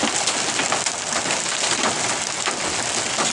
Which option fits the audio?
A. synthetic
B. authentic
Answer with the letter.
B